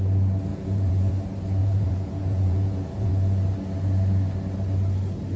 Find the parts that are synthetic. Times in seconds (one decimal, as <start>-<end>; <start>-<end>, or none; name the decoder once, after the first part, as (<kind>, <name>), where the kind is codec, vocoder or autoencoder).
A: 0.5-1.1 (vocoder, Vocos); 1.6-3.1